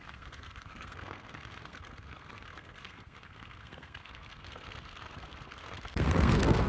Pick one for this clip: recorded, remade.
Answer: remade